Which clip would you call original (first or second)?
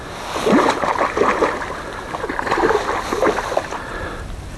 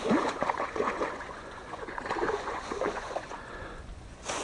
first